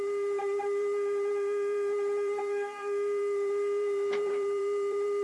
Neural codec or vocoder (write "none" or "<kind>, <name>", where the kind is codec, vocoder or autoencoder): vocoder, BigVGAN v2